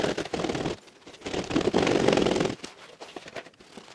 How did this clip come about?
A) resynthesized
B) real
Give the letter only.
B